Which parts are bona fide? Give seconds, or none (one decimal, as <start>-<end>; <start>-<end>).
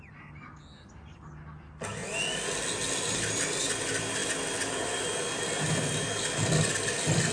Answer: 0.0-7.3